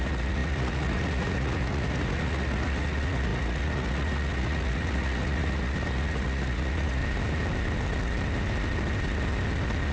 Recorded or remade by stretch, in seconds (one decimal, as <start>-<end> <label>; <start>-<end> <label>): 0.0-7.0 remade; 7.0-9.9 recorded